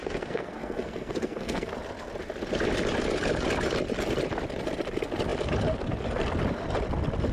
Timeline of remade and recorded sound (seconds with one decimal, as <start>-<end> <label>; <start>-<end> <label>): 0.0-1.7 remade; 1.7-7.3 recorded